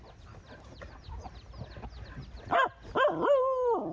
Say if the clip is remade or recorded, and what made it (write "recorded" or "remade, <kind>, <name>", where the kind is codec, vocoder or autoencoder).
recorded